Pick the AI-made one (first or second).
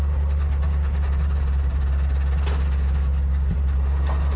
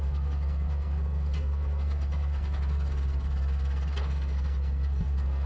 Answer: second